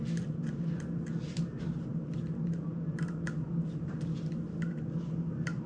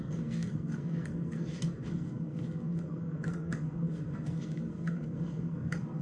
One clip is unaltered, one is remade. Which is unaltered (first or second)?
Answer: first